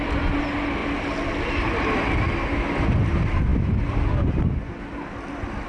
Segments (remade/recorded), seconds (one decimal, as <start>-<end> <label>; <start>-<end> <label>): 0.0-5.7 recorded